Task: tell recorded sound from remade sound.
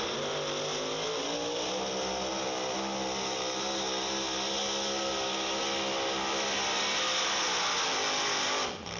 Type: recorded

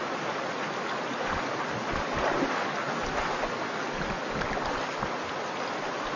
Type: recorded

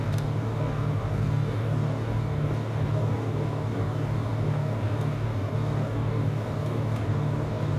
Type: remade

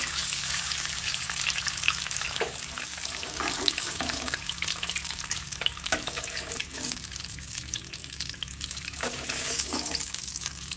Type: remade